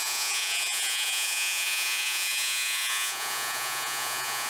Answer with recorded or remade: remade